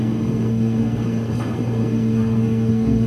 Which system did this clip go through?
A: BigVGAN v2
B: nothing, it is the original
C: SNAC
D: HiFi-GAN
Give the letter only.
C